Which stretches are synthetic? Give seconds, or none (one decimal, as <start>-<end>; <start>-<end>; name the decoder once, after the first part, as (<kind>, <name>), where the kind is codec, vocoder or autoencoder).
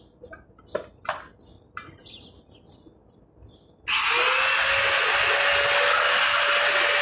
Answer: none